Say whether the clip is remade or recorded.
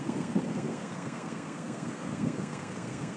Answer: remade